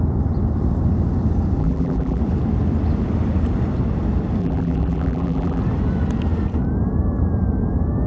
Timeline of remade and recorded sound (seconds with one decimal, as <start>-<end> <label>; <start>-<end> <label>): 0.0-1.6 recorded; 1.6-2.2 remade; 2.2-4.4 recorded; 4.4-5.6 remade; 5.6-8.1 recorded